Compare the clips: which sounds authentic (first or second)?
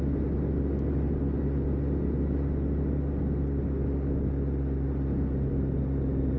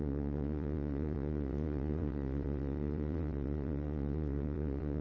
first